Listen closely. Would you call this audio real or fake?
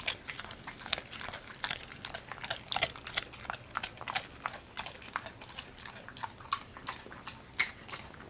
real